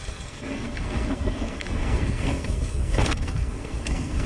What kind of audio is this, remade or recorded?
remade